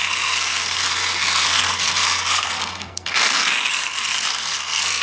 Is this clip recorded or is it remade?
remade